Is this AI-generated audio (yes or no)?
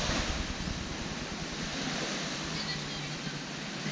no